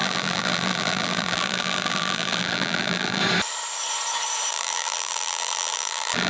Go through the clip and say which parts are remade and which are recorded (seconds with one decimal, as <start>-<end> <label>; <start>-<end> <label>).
0.0-3.2 remade; 3.2-4.5 recorded; 4.5-6.3 remade